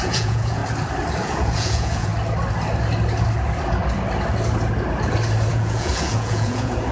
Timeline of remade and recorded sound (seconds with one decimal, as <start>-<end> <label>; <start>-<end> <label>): 0.0-0.6 remade; 0.6-1.2 recorded; 1.2-2.1 remade; 2.1-5.5 recorded; 5.5-6.9 remade